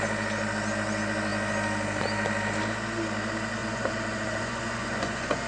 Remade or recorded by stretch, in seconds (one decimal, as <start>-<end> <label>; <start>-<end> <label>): 0.0-3.6 recorded; 3.6-5.5 remade